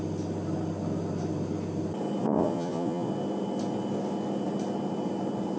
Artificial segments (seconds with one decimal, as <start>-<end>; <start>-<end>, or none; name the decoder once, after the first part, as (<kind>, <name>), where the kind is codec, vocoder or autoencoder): 2.2-3.1 (vocoder, Vocos)